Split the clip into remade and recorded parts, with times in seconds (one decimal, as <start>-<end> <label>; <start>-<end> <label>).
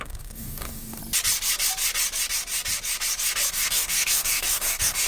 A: 0.0-1.0 remade; 1.0-3.5 recorded; 3.5-5.1 remade